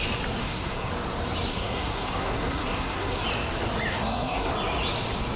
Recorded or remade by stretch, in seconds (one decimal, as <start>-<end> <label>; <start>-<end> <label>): 0.0-0.4 recorded; 0.4-0.9 remade; 0.9-1.5 recorded; 1.5-3.2 remade; 3.2-3.9 recorded; 3.9-4.5 remade; 4.5-5.4 recorded

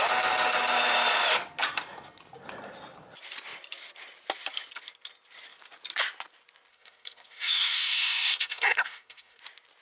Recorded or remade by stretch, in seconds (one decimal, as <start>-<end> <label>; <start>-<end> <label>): 0.0-6.7 recorded; 6.7-9.4 remade; 9.4-9.8 recorded

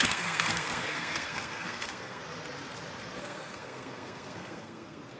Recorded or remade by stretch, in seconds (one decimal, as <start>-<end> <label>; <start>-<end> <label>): 0.0-2.2 remade; 2.2-3.2 recorded; 3.2-5.2 remade

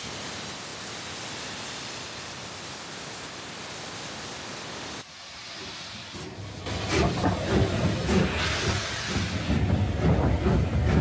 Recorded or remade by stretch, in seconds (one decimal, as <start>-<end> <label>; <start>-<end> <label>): 0.0-11.0 recorded

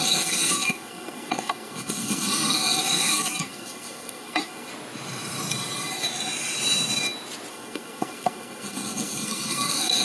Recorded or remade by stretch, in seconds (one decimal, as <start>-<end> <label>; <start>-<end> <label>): 0.0-4.7 remade; 4.7-7.5 recorded; 7.5-10.0 remade

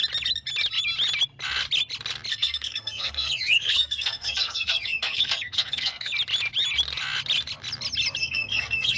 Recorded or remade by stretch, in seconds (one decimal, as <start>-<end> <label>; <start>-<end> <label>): 0.0-2.3 recorded; 2.3-6.1 remade; 6.1-8.2 recorded; 8.2-9.0 remade

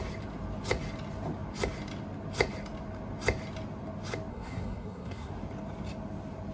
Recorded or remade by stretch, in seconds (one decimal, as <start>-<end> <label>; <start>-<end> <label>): 0.0-4.3 recorded; 4.3-5.3 remade; 5.3-6.5 recorded

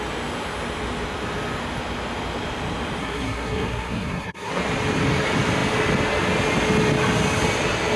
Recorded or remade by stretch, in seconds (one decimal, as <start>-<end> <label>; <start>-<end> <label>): 0.0-3.0 recorded; 3.0-4.5 remade; 4.5-8.0 recorded